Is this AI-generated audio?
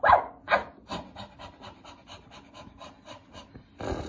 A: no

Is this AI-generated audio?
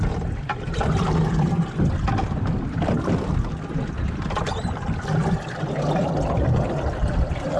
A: no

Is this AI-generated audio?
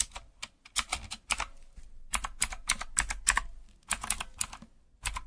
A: no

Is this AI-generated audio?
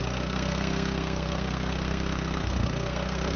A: yes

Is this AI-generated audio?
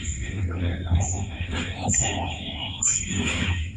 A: yes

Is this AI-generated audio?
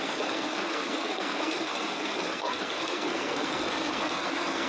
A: yes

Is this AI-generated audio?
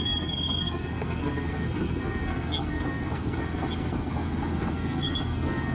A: yes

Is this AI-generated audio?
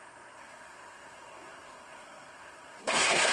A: yes